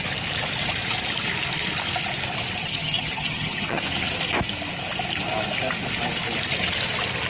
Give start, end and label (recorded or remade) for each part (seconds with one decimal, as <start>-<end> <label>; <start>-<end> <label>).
0.0-2.6 recorded; 2.6-3.8 remade; 3.8-7.3 recorded